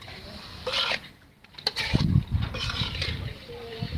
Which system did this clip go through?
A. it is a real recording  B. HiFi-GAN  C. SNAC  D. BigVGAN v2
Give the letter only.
D